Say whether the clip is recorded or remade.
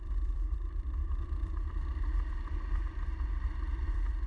remade